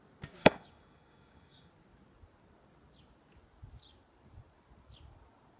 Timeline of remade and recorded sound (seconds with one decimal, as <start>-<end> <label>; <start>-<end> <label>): 0.0-0.4 recorded; 0.4-1.7 remade; 1.7-5.6 recorded